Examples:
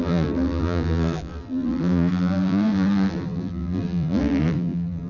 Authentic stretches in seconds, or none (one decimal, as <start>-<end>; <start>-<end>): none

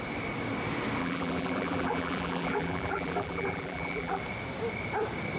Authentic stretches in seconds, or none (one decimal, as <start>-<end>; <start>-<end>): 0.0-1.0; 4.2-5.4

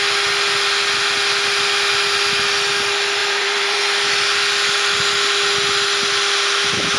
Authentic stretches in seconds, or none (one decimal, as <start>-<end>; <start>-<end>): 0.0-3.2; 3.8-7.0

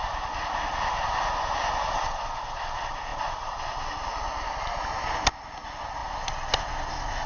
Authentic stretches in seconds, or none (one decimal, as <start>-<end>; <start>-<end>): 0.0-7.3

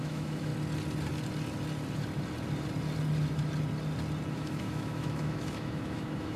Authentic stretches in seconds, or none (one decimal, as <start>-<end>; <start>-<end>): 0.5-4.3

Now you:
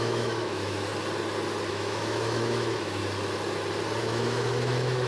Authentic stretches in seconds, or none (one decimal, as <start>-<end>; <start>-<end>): 0.9-1.7; 3.0-4.0